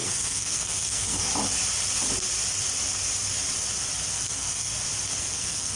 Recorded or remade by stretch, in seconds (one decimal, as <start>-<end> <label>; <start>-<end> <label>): 0.0-1.3 remade; 1.3-4.1 recorded; 4.1-4.7 remade; 4.7-5.2 recorded; 5.2-5.8 remade